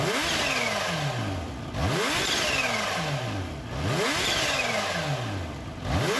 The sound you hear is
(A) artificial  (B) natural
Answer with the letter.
B